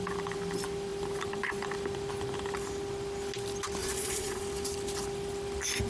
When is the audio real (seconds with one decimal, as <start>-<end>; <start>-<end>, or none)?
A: 0.0-3.8; 4.4-5.9